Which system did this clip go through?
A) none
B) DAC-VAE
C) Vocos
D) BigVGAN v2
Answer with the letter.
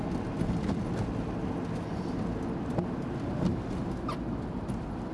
A